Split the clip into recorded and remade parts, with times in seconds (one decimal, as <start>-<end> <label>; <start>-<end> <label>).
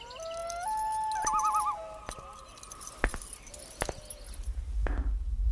0.0-5.5 recorded